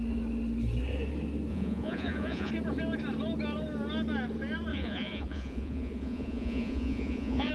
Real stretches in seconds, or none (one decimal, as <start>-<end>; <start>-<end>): 0.0-1.5; 2.5-4.7